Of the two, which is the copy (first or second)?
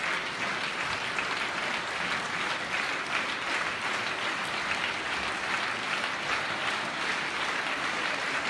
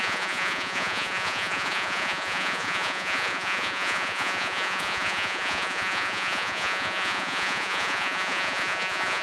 second